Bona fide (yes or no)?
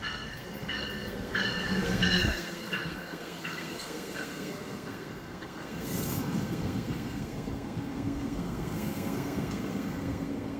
no